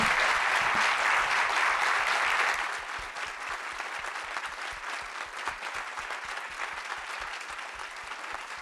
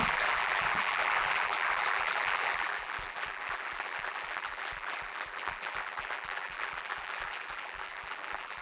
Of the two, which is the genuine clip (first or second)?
first